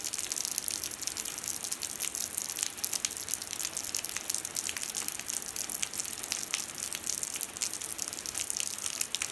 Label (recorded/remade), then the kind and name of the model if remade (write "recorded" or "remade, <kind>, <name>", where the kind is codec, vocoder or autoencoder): recorded